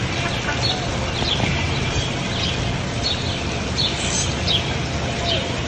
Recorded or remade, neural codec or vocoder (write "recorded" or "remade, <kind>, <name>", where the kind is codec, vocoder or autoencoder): recorded